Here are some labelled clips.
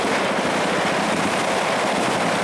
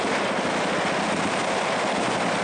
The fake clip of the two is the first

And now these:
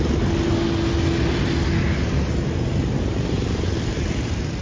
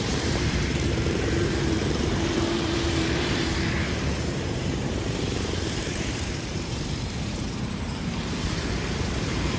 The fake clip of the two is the second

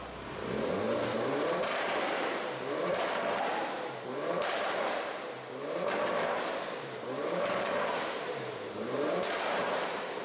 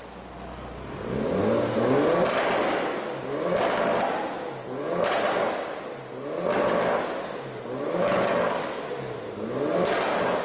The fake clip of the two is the first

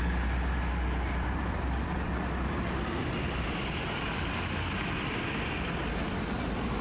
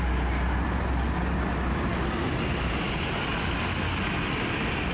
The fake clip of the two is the first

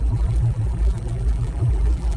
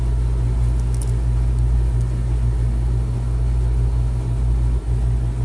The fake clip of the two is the first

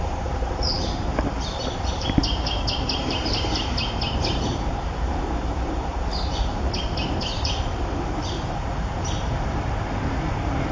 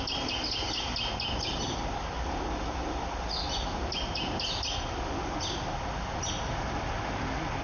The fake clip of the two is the first